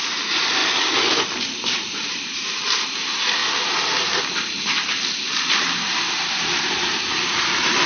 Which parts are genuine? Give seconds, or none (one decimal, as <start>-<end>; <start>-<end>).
0.6-1.5; 3.4-4.2